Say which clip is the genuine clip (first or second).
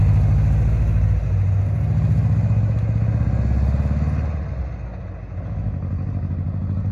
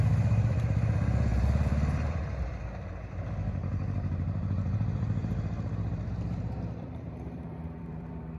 first